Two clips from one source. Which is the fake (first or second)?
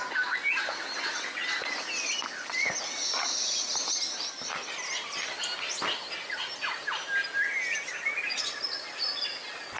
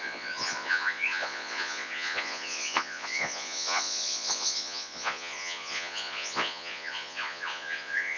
second